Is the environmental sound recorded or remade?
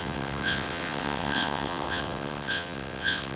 remade